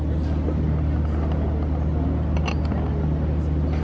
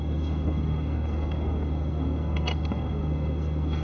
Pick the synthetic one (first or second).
second